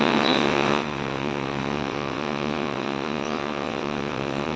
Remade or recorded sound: remade